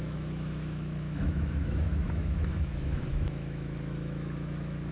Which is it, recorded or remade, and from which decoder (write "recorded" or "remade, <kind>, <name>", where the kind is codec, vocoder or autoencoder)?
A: remade, autoencoder, DAC-VAE